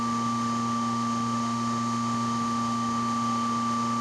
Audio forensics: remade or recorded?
remade